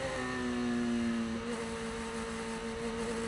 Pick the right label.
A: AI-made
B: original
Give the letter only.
B